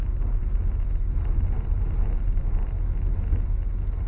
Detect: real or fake real